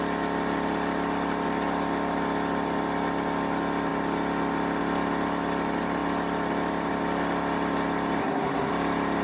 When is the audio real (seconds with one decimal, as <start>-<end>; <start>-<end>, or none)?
0.0-8.2; 8.7-9.2